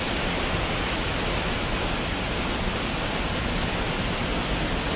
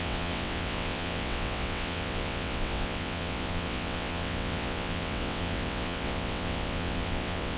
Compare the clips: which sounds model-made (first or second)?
second